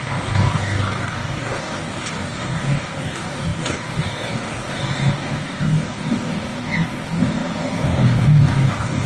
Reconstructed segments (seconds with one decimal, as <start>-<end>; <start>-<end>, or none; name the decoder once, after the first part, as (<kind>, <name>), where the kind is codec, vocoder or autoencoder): 0.0-9.1 (codec, DAC)